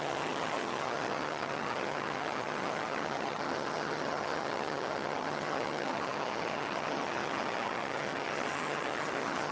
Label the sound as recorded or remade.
remade